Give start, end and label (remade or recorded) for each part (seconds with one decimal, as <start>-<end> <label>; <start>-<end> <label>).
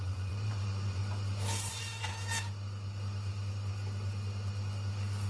0.0-1.0 remade; 1.0-1.7 recorded; 1.7-2.1 remade; 2.1-5.3 recorded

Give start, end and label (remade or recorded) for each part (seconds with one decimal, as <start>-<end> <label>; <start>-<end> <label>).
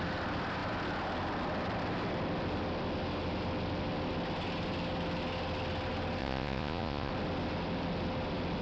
0.0-6.2 recorded; 6.2-7.1 remade; 7.1-8.6 recorded